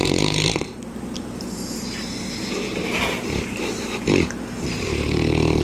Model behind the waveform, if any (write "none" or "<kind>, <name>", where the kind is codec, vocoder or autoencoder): vocoder, BigVGAN v2